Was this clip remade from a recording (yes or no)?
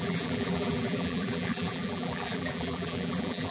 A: yes